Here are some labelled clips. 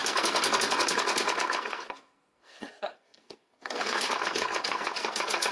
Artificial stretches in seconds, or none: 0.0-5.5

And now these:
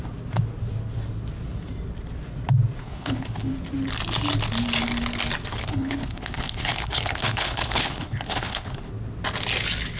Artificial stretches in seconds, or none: 2.8-3.5; 5.5-8.9

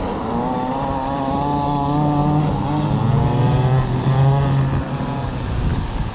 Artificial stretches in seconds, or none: none

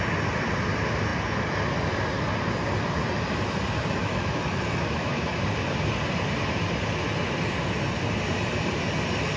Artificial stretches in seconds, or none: 4.0-5.3

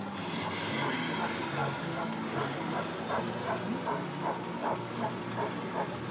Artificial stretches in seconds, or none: 1.6-2.8; 4.6-5.1

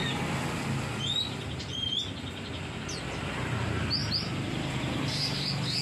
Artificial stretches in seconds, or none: 0.0-2.5; 4.0-5.8

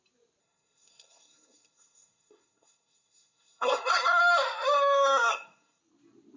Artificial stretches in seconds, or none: 0.4-4.2; 5.3-5.8

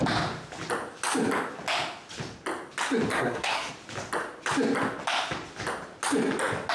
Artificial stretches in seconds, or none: 3.1-3.7